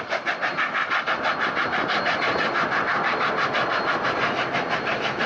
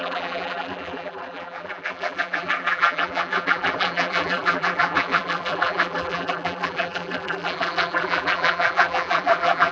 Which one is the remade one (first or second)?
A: second